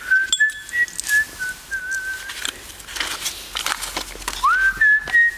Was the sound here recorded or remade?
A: recorded